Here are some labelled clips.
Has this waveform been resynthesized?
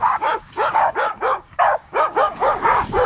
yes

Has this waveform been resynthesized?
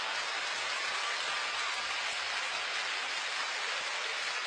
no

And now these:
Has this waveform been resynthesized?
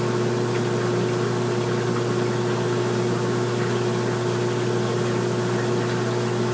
no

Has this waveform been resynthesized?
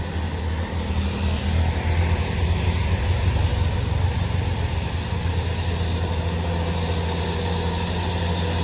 no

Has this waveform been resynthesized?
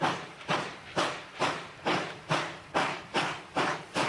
no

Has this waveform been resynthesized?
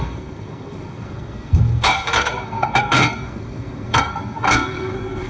yes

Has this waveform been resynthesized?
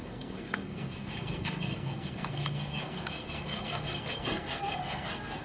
yes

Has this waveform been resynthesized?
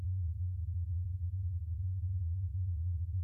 yes